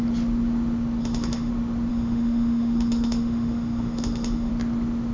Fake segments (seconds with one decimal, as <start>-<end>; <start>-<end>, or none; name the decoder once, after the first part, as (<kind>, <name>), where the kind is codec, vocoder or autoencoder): 1.0-1.5 (autoencoder, DAC-VAE); 1.9-4.5

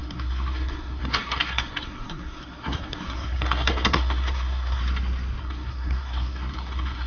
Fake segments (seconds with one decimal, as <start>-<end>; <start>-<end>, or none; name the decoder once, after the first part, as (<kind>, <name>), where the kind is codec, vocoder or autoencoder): 0.0-4.8 (codec, SNAC); 5.4-7.1

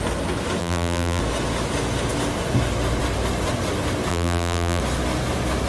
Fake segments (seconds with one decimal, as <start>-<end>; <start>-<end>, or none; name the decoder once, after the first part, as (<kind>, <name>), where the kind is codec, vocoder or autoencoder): 0.6-1.2 (vocoder, BigVGAN v2); 4.1-4.8

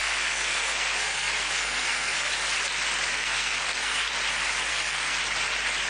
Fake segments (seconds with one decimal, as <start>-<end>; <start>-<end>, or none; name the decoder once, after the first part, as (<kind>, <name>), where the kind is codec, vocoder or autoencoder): 0.0-2.3 (codec, SNAC); 3.1-4.1; 4.7-5.2

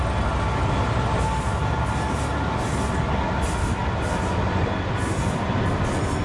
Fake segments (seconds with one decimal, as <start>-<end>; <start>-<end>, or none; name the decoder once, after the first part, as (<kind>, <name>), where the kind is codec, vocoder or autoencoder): none

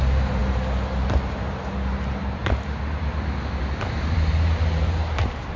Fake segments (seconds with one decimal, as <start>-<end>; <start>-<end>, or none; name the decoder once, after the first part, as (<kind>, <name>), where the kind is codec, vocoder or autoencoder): 0.0-0.4 (vocoder, BigVGAN v2); 3.8-5.6

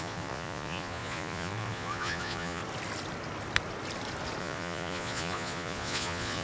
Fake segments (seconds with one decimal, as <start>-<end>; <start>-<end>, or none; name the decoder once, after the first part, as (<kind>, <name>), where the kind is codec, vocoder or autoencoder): 0.0-2.6 (vocoder, Vocos); 4.4-6.4